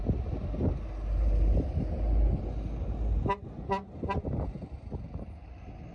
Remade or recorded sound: recorded